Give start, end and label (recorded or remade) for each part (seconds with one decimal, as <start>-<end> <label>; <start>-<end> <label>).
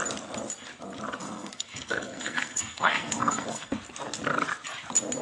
0.0-1.2 recorded; 1.2-3.8 remade; 3.8-5.2 recorded